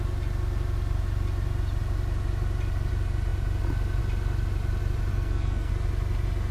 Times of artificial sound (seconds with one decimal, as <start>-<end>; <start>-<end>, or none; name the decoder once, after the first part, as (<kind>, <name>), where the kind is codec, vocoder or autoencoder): 5.1-5.7 (codec, SNAC)